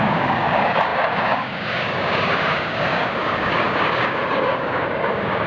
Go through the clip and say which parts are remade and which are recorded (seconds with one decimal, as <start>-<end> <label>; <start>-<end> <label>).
0.0-5.5 remade